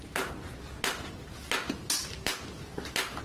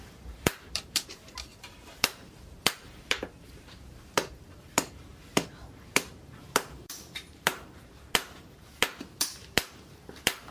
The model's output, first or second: second